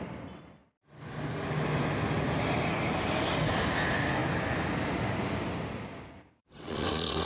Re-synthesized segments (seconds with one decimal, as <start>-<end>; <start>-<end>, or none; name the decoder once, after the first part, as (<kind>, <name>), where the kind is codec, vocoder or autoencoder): 6.4-7.3 (vocoder, WaveNeXt)